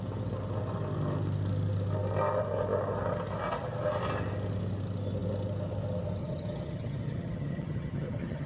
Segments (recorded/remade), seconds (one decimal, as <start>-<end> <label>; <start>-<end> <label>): 0.0-6.2 recorded; 6.2-8.5 remade